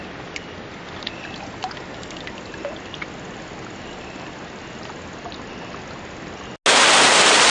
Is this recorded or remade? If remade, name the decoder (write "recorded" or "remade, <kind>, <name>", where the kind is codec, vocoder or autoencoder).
recorded